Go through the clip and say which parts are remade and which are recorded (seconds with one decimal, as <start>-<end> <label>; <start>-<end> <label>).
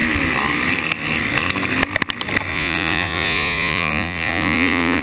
0.0-2.5 recorded; 2.5-5.0 remade